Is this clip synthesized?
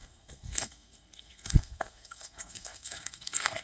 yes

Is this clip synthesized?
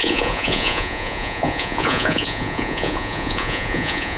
yes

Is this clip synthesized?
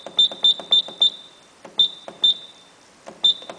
no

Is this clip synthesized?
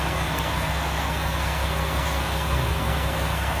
yes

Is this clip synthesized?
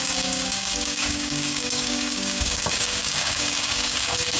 yes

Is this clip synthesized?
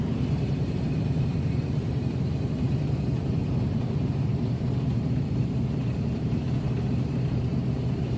yes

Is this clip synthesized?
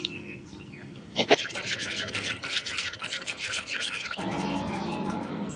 yes